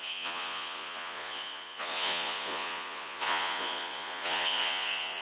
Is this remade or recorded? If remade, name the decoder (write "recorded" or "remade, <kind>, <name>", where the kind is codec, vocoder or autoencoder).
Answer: remade, vocoder, Vocos